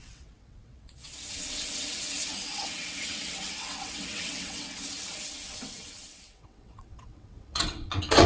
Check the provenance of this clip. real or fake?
fake